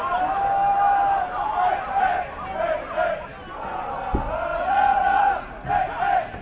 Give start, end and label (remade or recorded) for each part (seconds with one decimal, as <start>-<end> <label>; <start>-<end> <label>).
0.0-4.5 recorded; 4.5-5.7 remade; 5.7-6.4 recorded